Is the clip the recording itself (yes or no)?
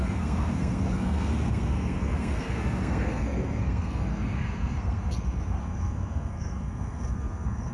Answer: no